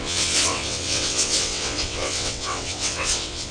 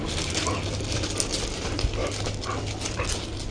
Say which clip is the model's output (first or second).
first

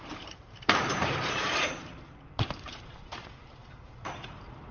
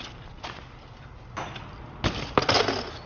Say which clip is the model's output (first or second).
first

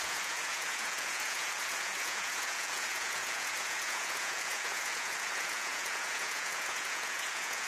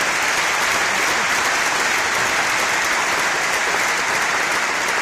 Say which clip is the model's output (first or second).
first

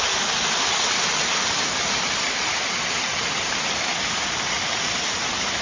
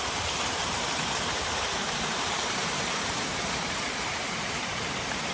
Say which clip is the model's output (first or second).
second